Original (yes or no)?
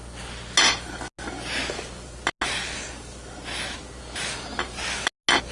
yes